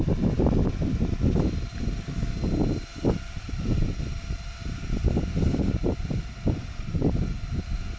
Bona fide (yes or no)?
yes